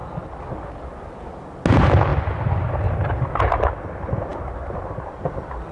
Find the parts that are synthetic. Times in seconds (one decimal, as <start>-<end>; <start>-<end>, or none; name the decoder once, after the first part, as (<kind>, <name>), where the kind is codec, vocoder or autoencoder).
0.0-1.2 (vocoder, BigVGAN v2); 2.1-3.4